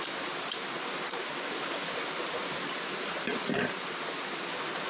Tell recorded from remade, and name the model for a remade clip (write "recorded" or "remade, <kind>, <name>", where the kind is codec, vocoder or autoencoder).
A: recorded